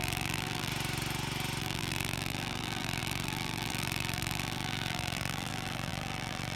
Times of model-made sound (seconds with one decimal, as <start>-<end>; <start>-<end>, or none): 0.0-0.7; 1.6-6.6